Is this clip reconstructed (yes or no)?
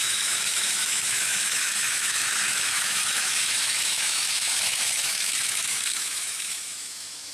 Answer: yes